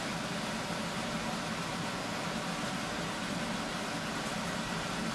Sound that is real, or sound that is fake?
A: real